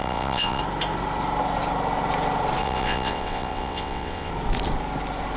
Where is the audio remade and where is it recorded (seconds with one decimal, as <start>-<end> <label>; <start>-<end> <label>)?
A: 0.0-0.6 remade; 0.6-2.6 recorded; 2.6-4.3 remade; 4.3-5.4 recorded